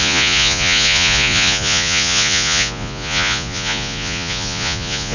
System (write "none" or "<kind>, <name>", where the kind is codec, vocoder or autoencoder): vocoder, Vocos